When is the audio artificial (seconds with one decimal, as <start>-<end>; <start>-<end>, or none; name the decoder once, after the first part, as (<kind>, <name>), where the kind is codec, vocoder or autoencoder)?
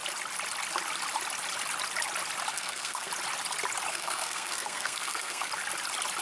2.5-3.1 (codec, SNAC); 3.9-5.5